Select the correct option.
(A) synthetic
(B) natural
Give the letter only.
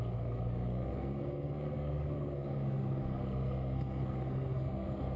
A